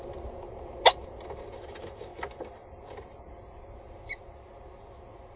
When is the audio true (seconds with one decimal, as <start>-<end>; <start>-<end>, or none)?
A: 0.0-5.4